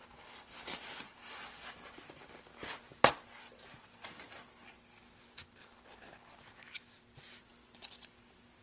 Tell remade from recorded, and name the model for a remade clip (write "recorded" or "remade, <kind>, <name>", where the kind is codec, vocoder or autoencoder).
recorded